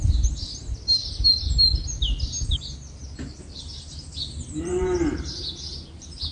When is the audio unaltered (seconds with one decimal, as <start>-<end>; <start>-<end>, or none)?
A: 1.0-3.6